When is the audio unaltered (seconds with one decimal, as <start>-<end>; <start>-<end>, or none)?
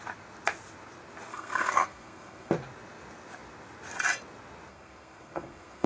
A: 0.0-1.3; 2.5-4.7